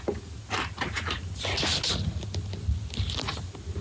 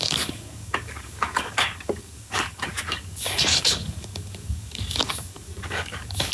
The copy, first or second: second